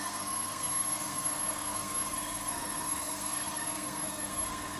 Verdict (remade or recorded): remade